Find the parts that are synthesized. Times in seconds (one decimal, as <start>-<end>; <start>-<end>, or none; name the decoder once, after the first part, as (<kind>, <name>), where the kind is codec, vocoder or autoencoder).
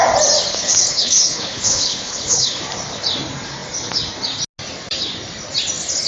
0.5-2.6 (codec, HILCodec)